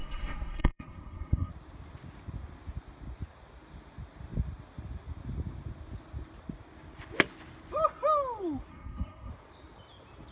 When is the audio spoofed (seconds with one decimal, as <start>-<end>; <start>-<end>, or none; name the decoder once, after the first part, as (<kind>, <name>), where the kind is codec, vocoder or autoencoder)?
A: 0.0-1.5 (codec, SNAC); 8.7-9.3